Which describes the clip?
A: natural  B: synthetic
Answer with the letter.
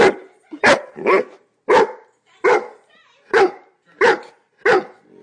A